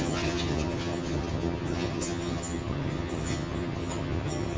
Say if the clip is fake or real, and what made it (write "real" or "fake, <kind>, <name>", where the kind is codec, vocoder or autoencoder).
fake, vocoder, HiFi-GAN